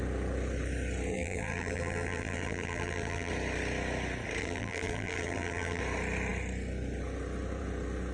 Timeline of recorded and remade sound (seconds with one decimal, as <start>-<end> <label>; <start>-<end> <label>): 0.0-1.1 recorded; 1.1-3.3 remade; 3.3-4.4 recorded; 4.4-5.8 remade; 5.8-8.1 recorded